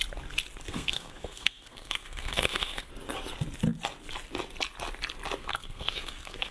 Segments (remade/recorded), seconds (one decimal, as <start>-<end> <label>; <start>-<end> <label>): 0.0-0.7 recorded; 0.7-2.9 remade; 2.9-5.4 recorded; 5.4-6.5 remade